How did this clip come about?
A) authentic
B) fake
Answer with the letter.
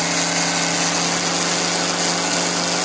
A